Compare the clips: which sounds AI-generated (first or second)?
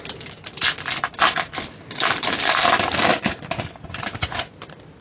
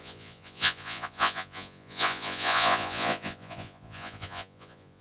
second